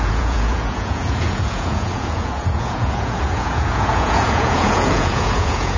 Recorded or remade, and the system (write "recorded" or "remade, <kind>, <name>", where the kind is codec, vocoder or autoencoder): remade, vocoder, Vocos